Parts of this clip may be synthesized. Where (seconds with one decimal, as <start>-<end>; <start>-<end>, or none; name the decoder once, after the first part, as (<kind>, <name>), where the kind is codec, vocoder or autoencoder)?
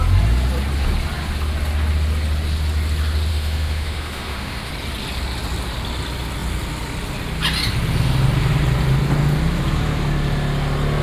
3.3-4.7 (autoencoder, DAC-VAE)